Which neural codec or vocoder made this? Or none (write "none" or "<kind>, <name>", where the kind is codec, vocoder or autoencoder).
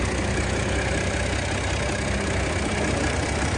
none